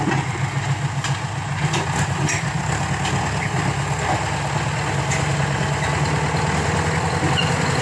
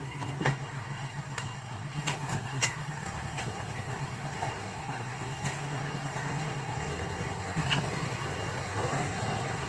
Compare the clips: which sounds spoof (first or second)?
second